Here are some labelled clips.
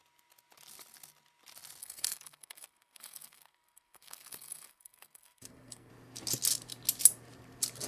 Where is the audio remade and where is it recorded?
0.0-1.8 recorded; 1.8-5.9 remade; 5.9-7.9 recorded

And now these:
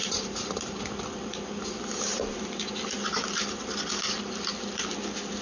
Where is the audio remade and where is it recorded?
0.0-0.8 remade; 0.8-5.4 recorded

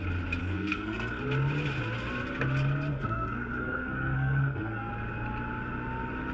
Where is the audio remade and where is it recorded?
0.0-0.4 recorded; 0.4-1.2 remade; 1.2-2.9 recorded; 2.9-4.9 remade; 4.9-6.3 recorded

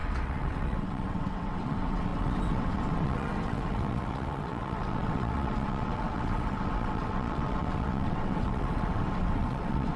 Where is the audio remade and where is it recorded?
0.0-10.0 remade

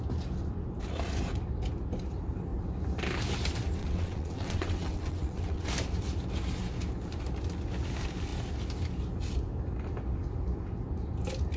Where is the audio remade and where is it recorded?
0.0-3.8 recorded; 3.8-5.7 remade; 5.7-11.6 recorded

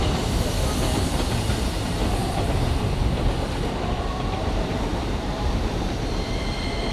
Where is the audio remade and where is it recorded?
0.0-2.0 recorded; 2.0-2.8 remade; 2.8-4.9 recorded; 4.9-5.9 remade; 5.9-6.9 recorded